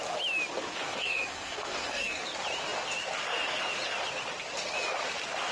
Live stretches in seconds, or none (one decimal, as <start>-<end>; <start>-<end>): 0.0-0.8; 2.2-5.5

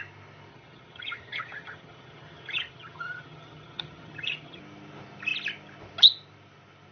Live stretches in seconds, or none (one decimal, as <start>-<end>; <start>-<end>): 0.0-0.5; 4.6-6.9

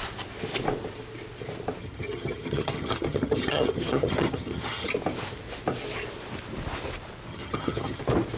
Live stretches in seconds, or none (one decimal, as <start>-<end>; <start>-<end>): 0.0-1.8; 4.9-7.3; 8.0-8.4

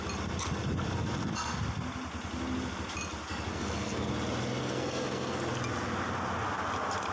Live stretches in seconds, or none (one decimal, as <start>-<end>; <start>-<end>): 0.0-3.5; 4.1-4.6; 5.4-7.1

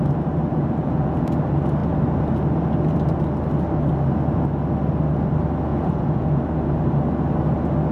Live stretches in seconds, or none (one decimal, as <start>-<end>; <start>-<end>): 0.0-0.5; 1.4-5.7; 6.4-7.9

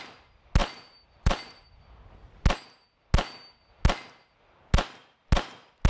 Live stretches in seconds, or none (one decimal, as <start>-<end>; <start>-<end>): 0.0-0.6; 1.6-5.9

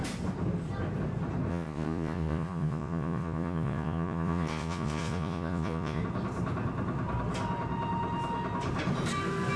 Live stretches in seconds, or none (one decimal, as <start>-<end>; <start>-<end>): 0.0-1.5; 6.0-9.6

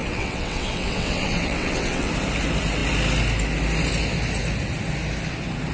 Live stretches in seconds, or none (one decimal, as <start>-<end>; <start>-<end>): 2.1-5.7